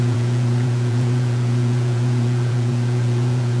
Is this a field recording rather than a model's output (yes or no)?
no